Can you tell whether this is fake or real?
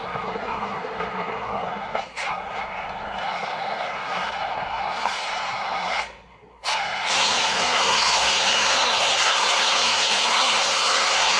fake